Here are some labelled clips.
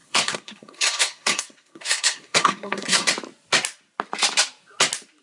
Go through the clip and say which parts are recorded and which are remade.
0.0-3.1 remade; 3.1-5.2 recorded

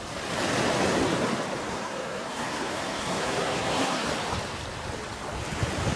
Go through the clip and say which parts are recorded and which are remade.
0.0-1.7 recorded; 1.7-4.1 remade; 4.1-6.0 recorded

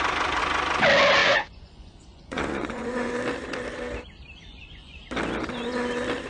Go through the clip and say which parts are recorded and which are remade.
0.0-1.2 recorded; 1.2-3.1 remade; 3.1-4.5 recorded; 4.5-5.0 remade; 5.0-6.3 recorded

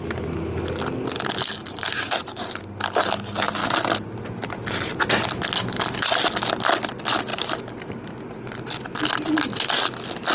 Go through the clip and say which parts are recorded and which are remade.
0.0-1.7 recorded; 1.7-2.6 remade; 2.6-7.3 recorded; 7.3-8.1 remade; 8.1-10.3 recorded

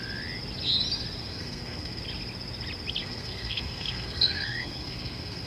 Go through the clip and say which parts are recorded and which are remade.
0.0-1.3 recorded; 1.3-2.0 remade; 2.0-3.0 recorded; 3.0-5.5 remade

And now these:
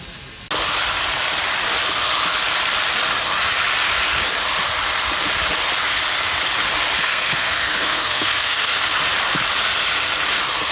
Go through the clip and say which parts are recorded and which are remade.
0.0-7.0 recorded; 7.0-8.9 remade; 8.9-10.7 recorded